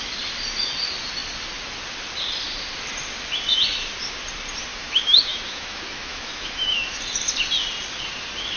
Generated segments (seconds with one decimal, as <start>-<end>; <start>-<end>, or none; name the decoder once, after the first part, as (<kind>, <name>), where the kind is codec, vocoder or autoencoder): 4.7-7.0 (autoencoder, DAC-VAE)

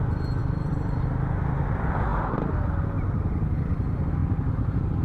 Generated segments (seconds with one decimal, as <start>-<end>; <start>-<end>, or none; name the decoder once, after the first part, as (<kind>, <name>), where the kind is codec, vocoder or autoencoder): 0.4-1.0 (vocoder, BigVGAN v2); 4.2-5.0

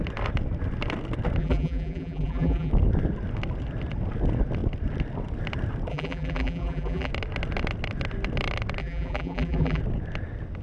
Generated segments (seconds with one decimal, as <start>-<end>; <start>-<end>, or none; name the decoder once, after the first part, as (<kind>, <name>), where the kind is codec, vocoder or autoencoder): 1.4-2.7 (vocoder, BigVGAN v2); 5.9-7.1; 8.8-9.8